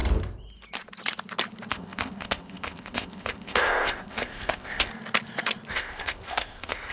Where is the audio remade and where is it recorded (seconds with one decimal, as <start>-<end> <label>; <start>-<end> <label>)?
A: 0.0-1.7 recorded; 1.7-4.9 remade; 4.9-5.7 recorded; 5.7-6.9 remade